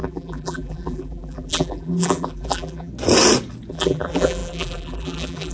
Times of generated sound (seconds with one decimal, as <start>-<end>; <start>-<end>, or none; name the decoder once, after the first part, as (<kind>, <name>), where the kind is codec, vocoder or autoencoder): 0.0-2.9 (vocoder, BigVGAN v2); 3.7-5.5